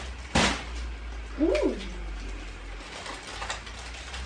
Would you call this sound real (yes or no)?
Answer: yes